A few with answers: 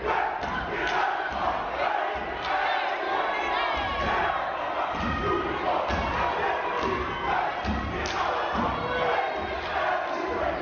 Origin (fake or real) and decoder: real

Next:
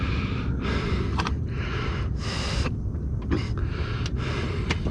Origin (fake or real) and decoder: real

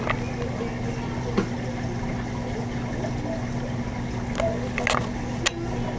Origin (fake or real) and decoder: real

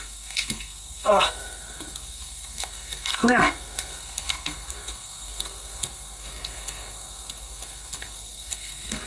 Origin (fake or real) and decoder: fake, codec, SNAC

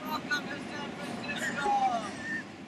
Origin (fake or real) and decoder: real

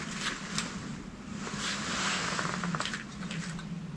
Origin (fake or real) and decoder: real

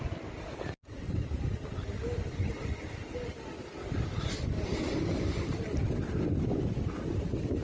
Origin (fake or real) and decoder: real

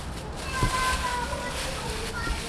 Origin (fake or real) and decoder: real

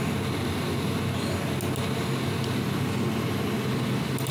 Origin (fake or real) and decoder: real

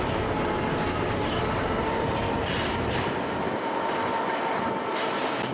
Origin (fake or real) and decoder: real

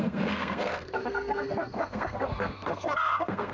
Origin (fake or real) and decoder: fake, codec, SNAC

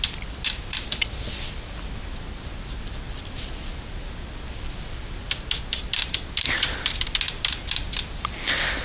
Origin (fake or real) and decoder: real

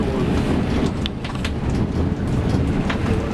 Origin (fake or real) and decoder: real